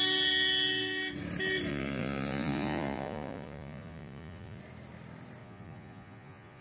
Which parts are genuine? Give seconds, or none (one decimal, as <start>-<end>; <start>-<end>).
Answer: 0.0-1.7; 4.6-5.4